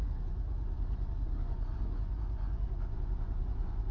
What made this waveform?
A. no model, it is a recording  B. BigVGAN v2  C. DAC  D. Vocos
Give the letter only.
D